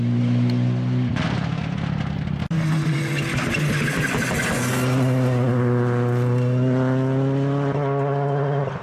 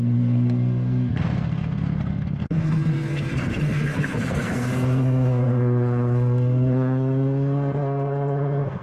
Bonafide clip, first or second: first